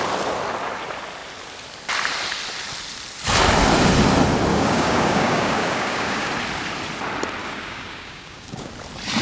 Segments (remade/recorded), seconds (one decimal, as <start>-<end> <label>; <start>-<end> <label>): 0.0-4.5 recorded; 4.5-6.3 remade; 6.3-7.4 recorded; 7.4-8.7 remade; 8.7-9.2 recorded